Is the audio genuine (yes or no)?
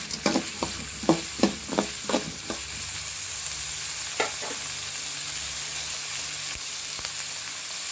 yes